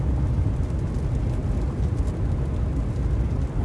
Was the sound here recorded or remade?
recorded